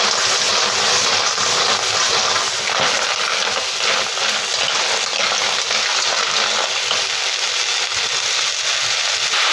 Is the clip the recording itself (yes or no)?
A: yes